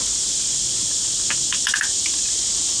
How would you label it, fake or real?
real